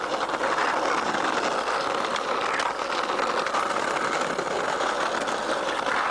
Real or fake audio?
real